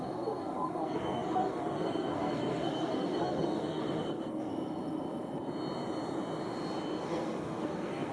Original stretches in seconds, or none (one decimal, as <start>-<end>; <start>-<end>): 4.5-7.0